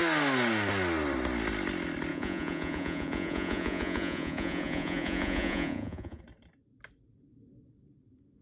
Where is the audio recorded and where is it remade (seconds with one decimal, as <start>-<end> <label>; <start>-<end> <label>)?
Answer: 0.0-2.1 recorded; 2.1-6.2 remade; 6.2-8.4 recorded